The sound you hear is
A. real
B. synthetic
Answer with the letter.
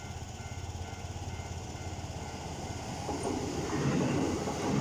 A